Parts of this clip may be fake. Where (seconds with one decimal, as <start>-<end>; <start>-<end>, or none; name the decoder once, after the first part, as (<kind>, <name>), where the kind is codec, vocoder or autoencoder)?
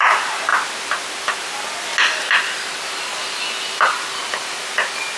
none